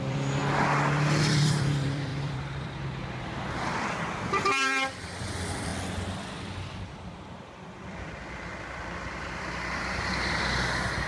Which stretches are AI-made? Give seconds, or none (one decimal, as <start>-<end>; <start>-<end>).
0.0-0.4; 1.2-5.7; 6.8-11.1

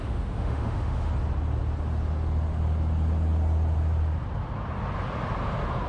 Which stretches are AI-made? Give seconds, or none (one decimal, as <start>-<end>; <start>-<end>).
0.0-1.1

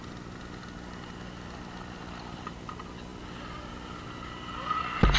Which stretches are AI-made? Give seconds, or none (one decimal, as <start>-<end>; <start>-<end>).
2.0-2.7

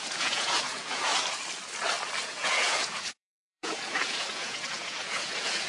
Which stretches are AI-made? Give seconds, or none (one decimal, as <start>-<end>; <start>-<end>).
0.0-1.1; 2.2-5.7

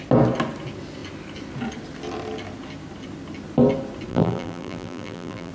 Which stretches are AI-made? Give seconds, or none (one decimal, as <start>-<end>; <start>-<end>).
4.1-5.5

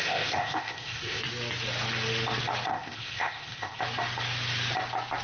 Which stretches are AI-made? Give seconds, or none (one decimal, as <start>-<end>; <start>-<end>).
0.0-1.2; 2.7-3.8

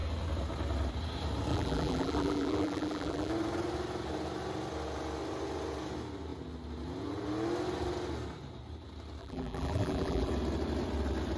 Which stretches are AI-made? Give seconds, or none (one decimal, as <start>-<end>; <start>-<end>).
1.5-3.3; 9.2-10.3